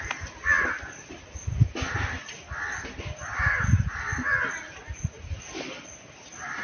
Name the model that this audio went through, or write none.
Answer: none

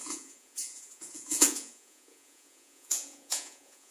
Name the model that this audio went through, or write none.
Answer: vocoder, Vocos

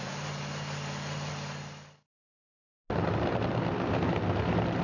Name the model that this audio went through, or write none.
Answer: none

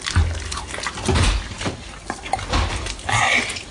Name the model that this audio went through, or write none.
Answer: none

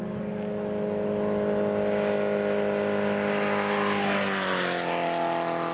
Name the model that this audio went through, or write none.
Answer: none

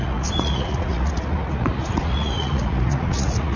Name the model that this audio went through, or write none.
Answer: vocoder, Vocos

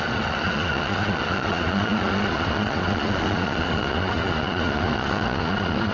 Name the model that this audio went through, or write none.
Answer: vocoder, Vocos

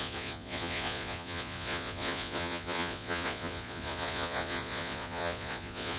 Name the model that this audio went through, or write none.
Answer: vocoder, Vocos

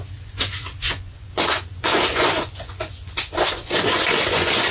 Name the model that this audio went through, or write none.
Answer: vocoder, Vocos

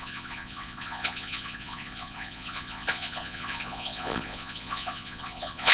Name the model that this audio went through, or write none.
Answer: vocoder, Vocos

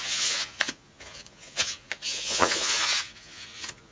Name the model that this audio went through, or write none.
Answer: vocoder, Vocos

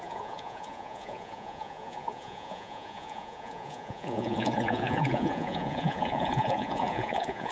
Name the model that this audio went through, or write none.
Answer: vocoder, Vocos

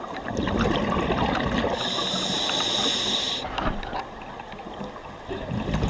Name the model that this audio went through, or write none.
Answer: none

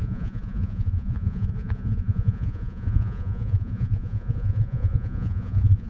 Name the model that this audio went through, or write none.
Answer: vocoder, Vocos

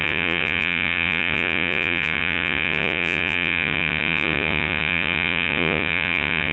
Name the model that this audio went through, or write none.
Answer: vocoder, Vocos